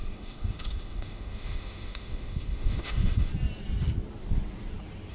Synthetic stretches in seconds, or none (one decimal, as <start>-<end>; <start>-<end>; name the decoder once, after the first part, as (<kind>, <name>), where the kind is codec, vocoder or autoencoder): 0.0-3.3 (autoencoder, DAC-VAE)

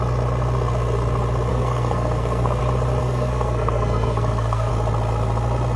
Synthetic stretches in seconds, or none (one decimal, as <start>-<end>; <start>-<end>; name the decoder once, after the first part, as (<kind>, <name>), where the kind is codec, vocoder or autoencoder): 1.5-2.6 (codec, SNAC); 3.0-4.7

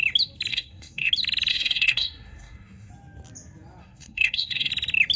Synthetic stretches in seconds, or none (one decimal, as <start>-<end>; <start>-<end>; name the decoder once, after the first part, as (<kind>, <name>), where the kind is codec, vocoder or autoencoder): 0.5-1.1 (codec, SNAC); 1.5-2.9; 3.8-4.7

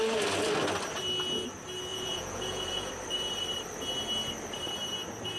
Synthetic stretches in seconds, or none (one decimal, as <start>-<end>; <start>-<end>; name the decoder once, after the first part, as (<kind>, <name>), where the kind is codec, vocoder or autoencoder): 1.9-2.9 (vocoder, Vocos)

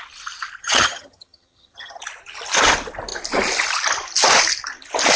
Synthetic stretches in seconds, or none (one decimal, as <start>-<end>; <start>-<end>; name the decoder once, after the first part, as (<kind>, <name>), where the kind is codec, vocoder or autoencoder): 0.6-2.0 (vocoder, HiFi-GAN)

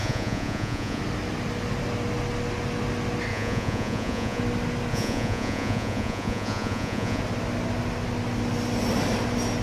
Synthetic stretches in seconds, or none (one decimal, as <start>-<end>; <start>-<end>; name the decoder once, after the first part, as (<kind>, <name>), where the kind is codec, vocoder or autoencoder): 0.0-1.0 (vocoder, Vocos); 3.3-4.4; 4.9-7.2

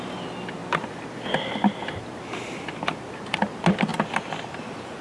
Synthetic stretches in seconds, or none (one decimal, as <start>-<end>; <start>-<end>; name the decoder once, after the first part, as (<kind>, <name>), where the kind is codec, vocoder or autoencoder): none

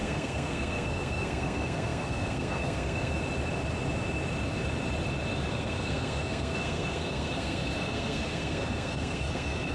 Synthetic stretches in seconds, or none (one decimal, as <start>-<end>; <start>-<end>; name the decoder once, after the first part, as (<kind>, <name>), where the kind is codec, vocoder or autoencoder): 0.0-3.2 (codec, SNAC); 5.5-9.7